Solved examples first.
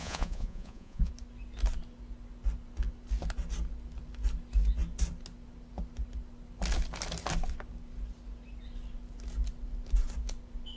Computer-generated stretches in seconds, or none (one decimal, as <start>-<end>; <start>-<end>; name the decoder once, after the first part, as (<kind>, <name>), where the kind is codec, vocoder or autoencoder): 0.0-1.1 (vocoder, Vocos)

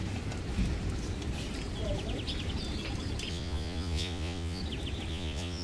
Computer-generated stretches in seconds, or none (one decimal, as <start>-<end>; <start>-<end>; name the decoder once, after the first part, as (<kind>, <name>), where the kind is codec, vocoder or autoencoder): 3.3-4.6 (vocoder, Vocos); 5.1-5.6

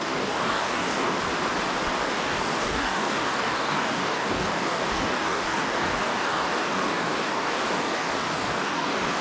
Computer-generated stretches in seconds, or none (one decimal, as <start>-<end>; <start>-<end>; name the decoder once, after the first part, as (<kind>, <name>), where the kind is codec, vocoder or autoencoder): 0.0-1.3 (codec, DAC); 2.1-9.2

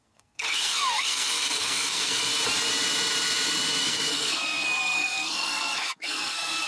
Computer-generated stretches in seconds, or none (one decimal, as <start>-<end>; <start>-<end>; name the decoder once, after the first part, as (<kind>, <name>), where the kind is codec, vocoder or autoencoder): 0.0-2.3 (codec, SNAC); 3.8-6.7

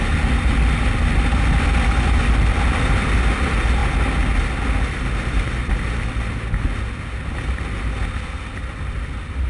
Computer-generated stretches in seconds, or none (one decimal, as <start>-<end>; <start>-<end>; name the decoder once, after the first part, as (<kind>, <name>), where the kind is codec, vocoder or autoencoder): none

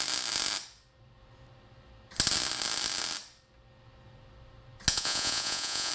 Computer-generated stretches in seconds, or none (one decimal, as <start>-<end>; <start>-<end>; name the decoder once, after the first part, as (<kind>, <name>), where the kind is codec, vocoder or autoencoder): 4.9-5.9 (vocoder, Vocos)